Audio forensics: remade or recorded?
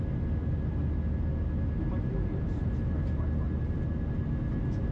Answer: recorded